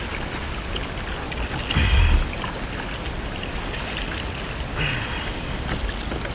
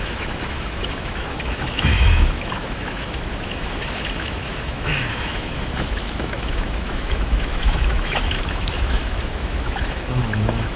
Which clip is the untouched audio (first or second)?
first